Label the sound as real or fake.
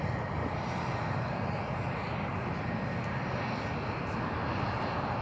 real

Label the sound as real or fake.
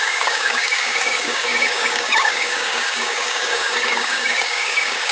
fake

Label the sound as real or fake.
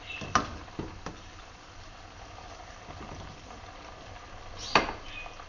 real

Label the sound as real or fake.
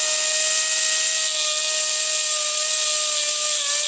real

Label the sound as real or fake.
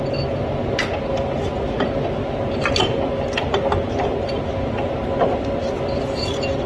real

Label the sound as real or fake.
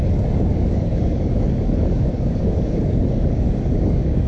fake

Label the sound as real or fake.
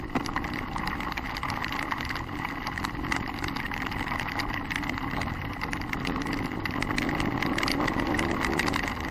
real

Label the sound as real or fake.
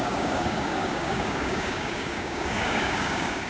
fake